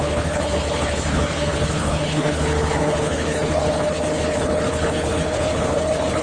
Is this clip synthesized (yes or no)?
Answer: yes